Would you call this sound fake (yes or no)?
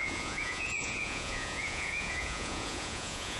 yes